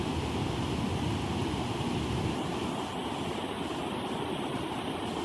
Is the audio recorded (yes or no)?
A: yes